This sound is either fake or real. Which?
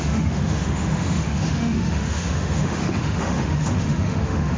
fake